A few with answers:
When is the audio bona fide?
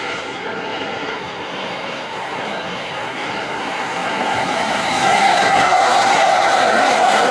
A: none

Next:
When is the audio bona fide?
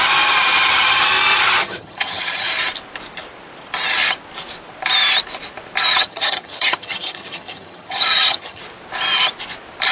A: 0.0-1.6; 2.5-5.9; 8.6-9.9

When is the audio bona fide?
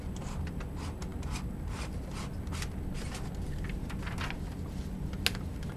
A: 0.0-5.8